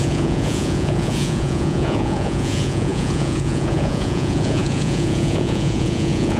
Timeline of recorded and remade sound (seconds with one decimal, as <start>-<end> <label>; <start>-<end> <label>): 0.0-6.4 remade